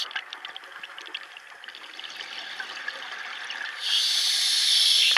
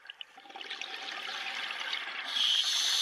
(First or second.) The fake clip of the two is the second